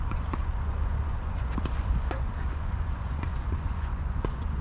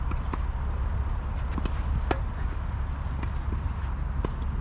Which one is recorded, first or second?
second